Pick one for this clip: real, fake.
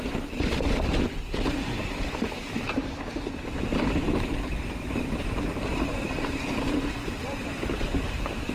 fake